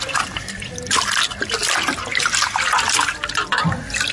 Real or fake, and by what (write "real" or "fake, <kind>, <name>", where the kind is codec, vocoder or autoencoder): real